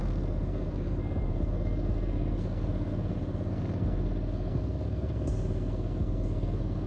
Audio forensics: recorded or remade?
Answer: remade